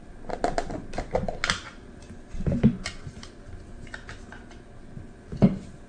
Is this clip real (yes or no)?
yes